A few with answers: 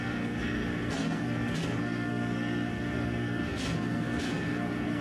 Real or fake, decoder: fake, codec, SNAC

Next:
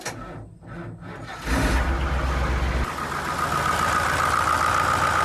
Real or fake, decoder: real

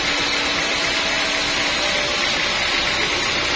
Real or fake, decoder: real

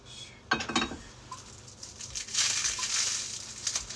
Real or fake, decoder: real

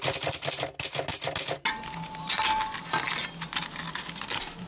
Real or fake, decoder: real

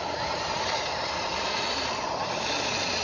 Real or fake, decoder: real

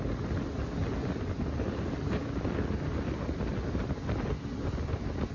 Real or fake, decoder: real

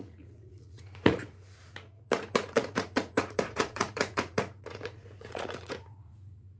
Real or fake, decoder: fake, vocoder, Vocos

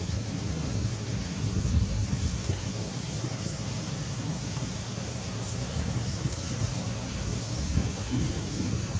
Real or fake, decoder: fake, codec, SNAC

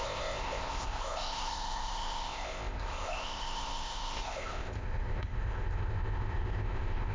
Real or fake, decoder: fake, codec, ZipCodec